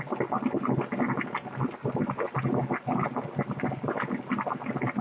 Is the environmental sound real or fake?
real